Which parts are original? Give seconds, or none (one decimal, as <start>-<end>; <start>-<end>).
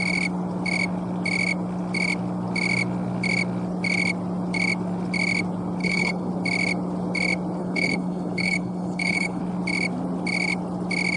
0.0-5.8; 6.3-7.6; 9.4-11.2